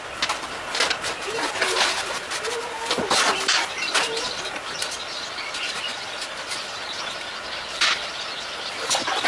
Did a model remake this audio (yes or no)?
no